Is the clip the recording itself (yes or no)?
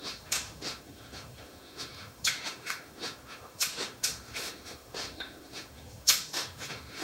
no